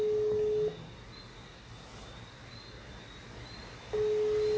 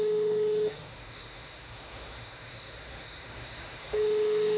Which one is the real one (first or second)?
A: first